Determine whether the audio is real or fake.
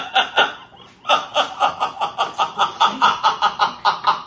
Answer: real